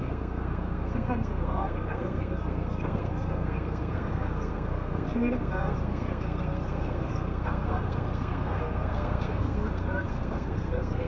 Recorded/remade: remade